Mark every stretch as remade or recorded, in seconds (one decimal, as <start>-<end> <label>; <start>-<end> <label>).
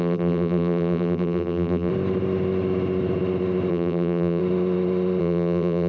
0.0-1.9 remade; 1.9-3.7 recorded; 3.7-4.4 remade; 4.4-5.2 recorded; 5.2-5.9 remade